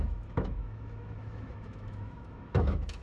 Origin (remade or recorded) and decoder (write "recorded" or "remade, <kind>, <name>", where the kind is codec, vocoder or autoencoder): remade, autoencoder, DAC-VAE